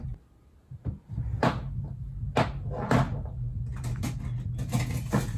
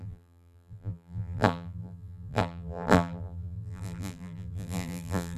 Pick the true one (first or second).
first